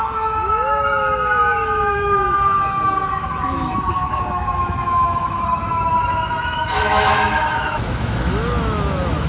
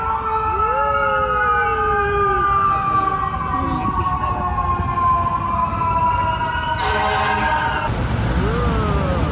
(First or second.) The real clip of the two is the second